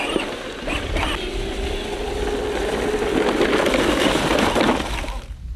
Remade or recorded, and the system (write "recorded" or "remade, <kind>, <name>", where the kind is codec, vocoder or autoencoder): recorded